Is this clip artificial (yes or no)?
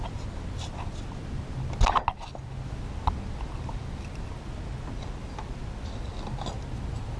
no